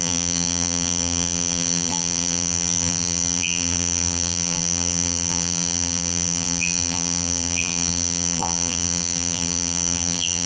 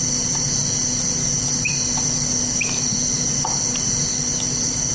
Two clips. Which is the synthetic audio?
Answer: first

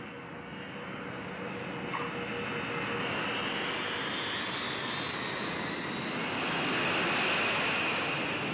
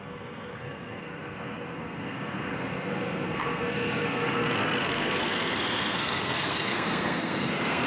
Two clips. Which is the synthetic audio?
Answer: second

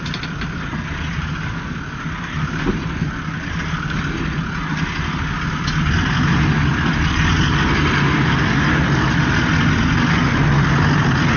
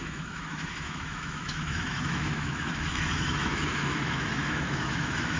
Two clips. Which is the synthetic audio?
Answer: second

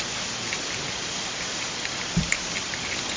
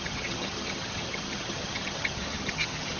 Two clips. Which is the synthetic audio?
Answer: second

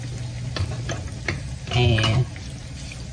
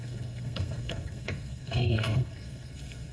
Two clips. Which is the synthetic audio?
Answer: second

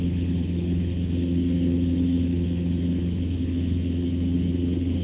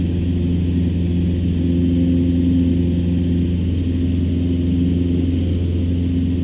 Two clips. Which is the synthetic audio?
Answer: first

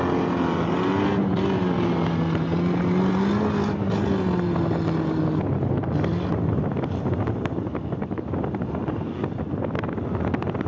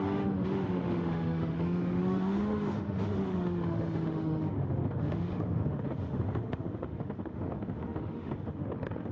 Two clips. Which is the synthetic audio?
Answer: second